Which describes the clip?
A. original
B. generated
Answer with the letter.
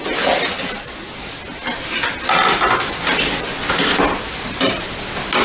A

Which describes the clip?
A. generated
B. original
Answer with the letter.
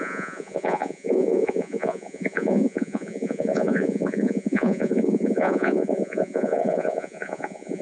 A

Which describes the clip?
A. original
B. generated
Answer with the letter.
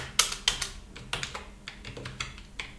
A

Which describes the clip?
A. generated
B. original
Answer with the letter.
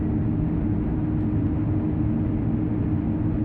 B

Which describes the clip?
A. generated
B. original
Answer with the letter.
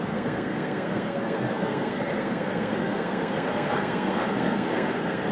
A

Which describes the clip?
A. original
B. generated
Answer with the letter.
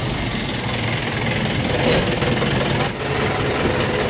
A